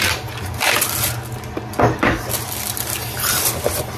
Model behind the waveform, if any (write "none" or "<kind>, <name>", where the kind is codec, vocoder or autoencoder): none